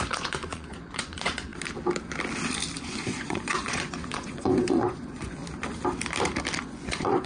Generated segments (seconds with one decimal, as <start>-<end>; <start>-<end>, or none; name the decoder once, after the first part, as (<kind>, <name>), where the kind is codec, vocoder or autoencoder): 0.0-1.5 (vocoder, Vocos); 2.8-5.4; 6.6-7.3